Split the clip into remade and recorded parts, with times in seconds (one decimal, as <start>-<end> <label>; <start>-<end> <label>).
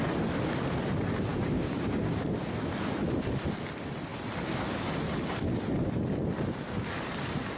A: 0.0-1.3 recorded; 1.3-2.2 remade; 2.2-7.6 recorded